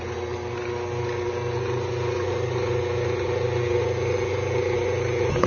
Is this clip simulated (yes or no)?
no